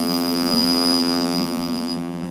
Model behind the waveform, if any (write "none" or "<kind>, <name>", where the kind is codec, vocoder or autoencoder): vocoder, BigVGAN v2